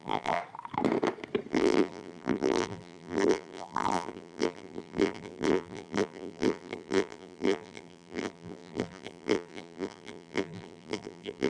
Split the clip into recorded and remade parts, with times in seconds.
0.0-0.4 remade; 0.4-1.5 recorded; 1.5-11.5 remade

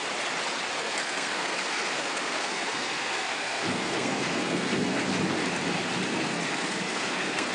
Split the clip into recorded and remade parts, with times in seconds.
0.0-0.8 recorded; 0.8-5.0 remade; 5.0-6.1 recorded; 6.1-7.5 remade

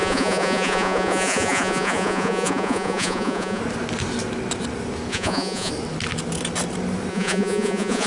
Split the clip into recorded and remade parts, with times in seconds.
0.0-3.6 remade; 3.6-5.1 recorded; 5.1-5.7 remade; 5.7-7.1 recorded; 7.1-8.1 remade

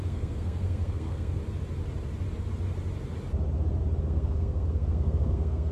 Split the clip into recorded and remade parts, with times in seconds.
0.0-1.4 remade; 1.4-4.0 recorded; 4.0-5.7 remade

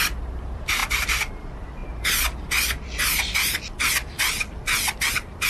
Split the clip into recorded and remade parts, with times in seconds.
0.0-1.8 remade; 1.8-5.1 recorded; 5.1-5.5 remade

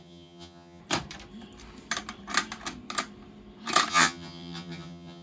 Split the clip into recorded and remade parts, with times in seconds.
0.0-0.8 remade; 0.8-3.9 recorded; 3.9-5.2 remade

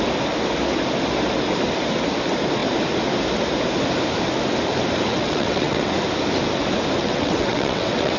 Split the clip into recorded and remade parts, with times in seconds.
0.0-5.1 recorded; 5.1-5.9 remade; 5.9-7.0 recorded; 7.0-8.2 remade